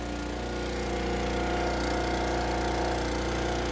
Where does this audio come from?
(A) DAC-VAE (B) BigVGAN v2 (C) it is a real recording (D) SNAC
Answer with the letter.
C